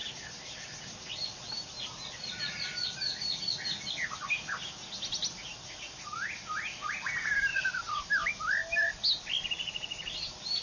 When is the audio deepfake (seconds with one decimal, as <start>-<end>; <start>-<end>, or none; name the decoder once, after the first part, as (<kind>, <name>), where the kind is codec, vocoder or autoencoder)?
7.5-8.0 (vocoder, WaveNeXt)